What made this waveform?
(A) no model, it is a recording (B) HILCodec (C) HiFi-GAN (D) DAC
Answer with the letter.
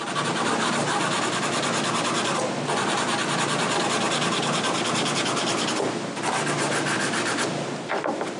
A